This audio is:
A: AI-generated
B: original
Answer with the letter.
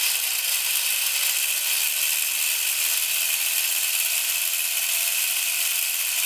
B